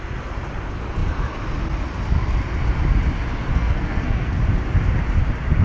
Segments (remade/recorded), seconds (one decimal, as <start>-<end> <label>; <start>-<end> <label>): 0.0-3.5 recorded; 3.5-4.4 remade; 4.4-5.6 recorded